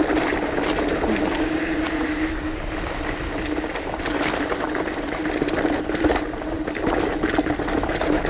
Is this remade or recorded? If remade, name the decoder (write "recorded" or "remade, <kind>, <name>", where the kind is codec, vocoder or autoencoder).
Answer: recorded